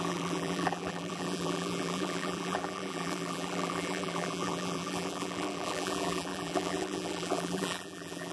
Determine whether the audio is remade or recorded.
remade